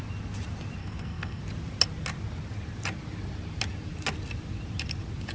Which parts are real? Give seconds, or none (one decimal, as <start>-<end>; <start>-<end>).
0.0-0.8; 1.4-5.3